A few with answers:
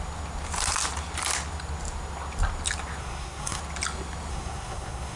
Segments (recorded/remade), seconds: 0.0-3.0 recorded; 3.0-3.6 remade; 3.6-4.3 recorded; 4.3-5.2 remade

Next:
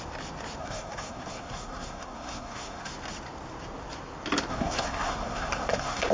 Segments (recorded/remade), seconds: 0.0-0.6 recorded; 0.6-2.9 remade; 2.9-4.5 recorded; 4.5-6.1 remade

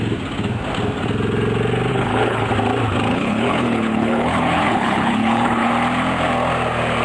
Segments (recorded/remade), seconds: 0.0-1.9 recorded; 1.9-2.5 remade; 2.5-3.1 recorded; 3.1-5.7 remade; 5.7-7.0 recorded

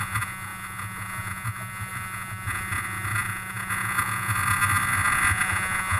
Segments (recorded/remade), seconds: 0.0-6.0 remade

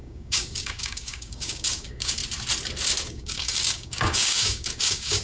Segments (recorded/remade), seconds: 0.0-2.2 remade; 2.2-3.1 recorded; 3.1-5.2 remade